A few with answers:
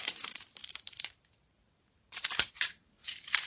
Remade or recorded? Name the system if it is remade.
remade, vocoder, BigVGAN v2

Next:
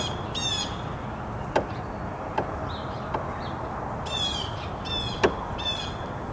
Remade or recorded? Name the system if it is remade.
recorded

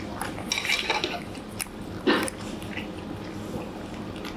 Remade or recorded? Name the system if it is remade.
recorded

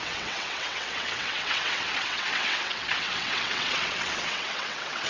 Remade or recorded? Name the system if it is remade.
remade, vocoder, WaveNeXt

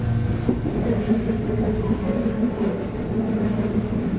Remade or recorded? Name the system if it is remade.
recorded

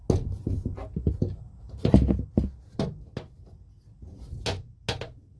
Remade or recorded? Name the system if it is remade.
recorded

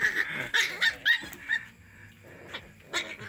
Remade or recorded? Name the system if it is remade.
recorded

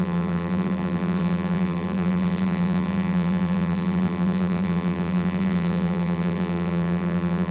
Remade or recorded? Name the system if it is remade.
remade, vocoder, BigVGAN v2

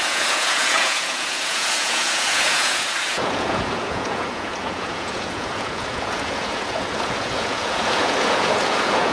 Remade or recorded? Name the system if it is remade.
remade, vocoder, Vocos